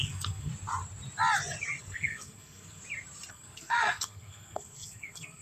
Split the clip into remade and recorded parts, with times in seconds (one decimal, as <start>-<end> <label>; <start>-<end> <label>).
0.0-0.5 remade; 0.5-1.8 recorded; 1.8-2.8 remade; 2.8-3.3 recorded; 3.3-5.4 remade